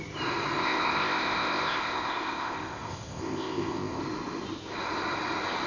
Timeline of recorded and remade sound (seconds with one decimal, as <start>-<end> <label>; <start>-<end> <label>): 0.0-0.6 recorded; 0.6-4.0 remade; 4.0-5.7 recorded